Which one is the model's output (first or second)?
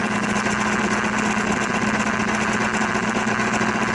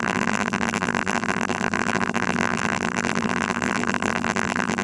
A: second